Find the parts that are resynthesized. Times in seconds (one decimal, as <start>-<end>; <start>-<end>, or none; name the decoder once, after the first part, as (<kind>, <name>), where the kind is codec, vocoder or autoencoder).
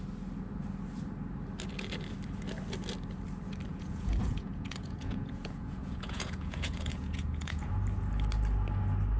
3.7-7.7 (vocoder, Vocos)